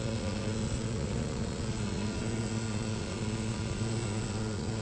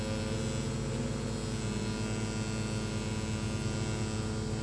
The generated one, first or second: first